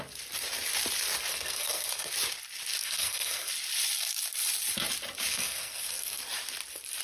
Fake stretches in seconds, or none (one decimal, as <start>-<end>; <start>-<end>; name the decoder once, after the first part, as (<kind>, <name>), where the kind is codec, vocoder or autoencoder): 1.3-2.1 (codec, SNAC); 2.8-3.5; 5.3-6.2